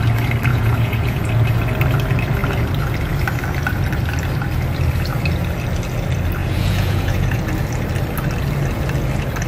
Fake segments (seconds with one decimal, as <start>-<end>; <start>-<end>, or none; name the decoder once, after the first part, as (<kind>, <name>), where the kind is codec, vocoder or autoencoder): 0.5-1.3 (vocoder, Vocos); 6.4-7.4